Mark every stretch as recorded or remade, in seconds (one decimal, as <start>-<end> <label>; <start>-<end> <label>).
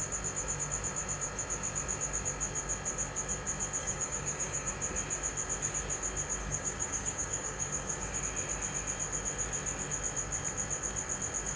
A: 0.0-3.8 recorded; 3.8-4.7 remade; 4.7-6.4 recorded; 6.4-8.2 remade; 8.2-11.6 recorded